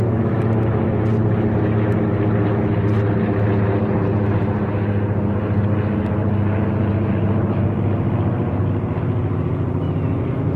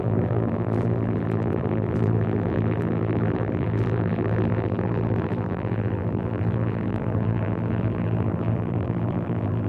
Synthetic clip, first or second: second